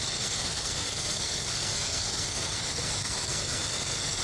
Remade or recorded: remade